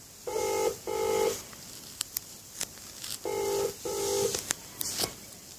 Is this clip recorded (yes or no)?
yes